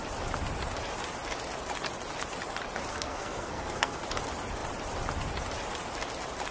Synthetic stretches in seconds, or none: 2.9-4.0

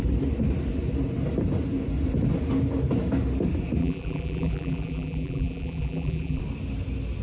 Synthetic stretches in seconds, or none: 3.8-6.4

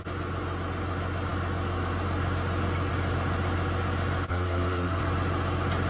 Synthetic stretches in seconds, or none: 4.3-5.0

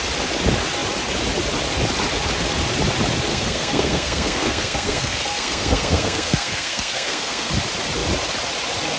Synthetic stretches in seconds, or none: 3.3-7.5

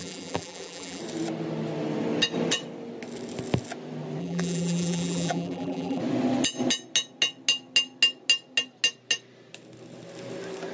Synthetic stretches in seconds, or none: 0.0-1.0; 4.2-6.0